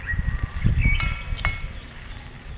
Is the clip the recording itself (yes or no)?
yes